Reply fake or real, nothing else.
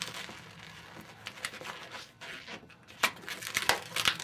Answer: real